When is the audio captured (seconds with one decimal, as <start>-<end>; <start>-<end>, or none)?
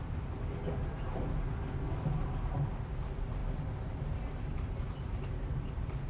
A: 0.0-6.1